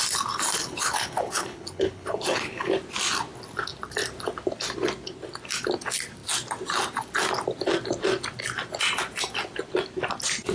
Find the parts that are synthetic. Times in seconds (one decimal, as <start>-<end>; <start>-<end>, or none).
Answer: 0.6-2.7